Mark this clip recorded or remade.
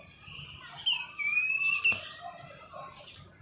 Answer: recorded